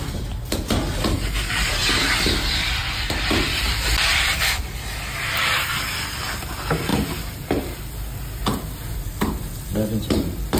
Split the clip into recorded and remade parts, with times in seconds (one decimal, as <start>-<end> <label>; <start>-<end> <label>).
0.0-2.8 recorded; 2.8-4.6 remade; 4.6-6.9 recorded; 6.9-7.8 remade; 7.8-9.7 recorded; 9.7-10.6 remade